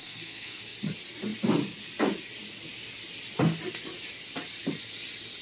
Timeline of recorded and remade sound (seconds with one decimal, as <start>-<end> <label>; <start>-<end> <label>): 0.0-0.6 remade; 0.6-5.4 recorded